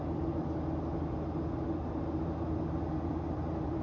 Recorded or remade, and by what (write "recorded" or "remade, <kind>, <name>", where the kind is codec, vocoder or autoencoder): recorded